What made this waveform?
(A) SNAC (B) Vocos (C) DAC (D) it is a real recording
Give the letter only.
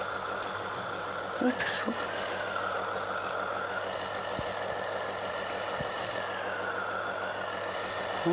D